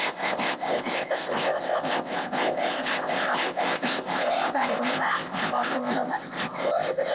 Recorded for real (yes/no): no